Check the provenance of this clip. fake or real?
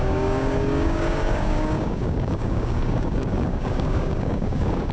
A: fake